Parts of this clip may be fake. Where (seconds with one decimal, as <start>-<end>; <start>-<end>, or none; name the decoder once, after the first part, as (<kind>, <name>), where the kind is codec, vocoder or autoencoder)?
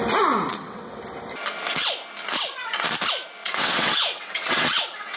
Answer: 0.5-1.0 (vocoder, WaveNeXt); 3.4-5.2